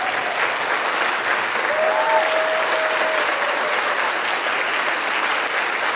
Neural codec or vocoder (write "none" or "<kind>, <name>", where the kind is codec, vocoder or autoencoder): none